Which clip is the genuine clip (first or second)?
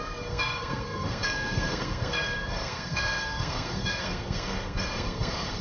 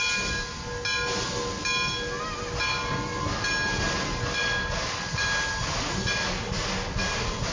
second